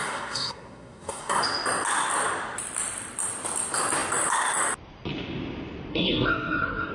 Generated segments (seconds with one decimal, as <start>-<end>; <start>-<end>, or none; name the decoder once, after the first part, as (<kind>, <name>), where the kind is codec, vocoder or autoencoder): 0.0-1.4 (codec, SNAC); 5.9-6.9